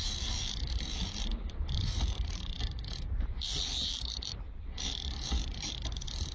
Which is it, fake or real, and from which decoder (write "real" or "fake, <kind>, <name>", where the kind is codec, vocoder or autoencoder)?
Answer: fake, vocoder, BigVGAN v2